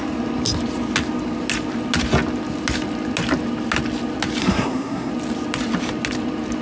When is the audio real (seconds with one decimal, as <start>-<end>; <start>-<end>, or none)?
0.0-4.4; 5.1-6.6

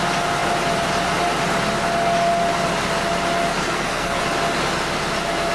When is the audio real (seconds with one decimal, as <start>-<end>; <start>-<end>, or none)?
0.0-3.5; 4.2-5.5

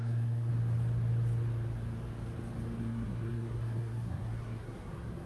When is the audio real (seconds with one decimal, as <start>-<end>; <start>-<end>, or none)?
0.5-2.8

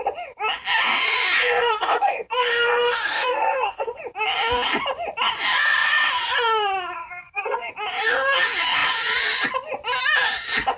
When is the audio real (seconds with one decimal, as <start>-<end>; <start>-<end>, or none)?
0.0-1.4; 4.0-7.0; 7.7-10.8

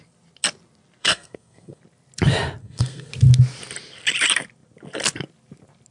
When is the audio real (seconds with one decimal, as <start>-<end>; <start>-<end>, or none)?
0.0-1.0; 1.8-2.6; 3.1-5.9

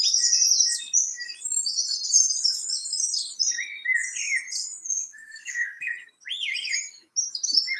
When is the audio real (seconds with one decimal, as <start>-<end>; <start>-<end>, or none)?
0.0-4.9; 5.9-7.8

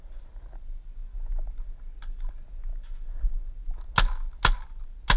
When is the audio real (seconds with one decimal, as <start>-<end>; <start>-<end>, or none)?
0.0-5.2

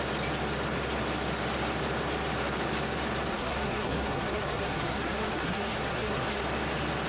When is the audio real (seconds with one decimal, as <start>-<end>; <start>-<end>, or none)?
0.0-3.3; 6.4-7.1